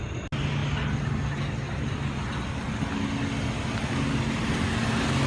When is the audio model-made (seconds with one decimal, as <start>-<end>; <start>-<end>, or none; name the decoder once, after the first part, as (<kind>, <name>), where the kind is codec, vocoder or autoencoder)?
none